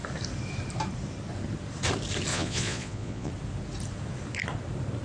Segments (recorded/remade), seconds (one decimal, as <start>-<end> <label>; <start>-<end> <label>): 0.0-2.3 recorded; 2.3-3.3 remade; 3.3-5.0 recorded